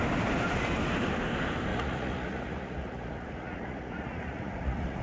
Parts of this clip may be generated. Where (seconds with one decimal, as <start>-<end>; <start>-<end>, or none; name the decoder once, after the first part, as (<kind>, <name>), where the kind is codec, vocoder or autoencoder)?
1.7-5.0 (vocoder, Vocos)